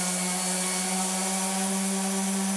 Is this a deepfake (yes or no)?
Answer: no